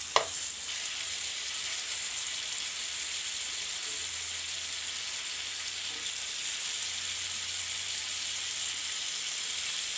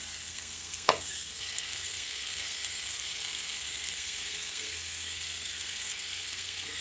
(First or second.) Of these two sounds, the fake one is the second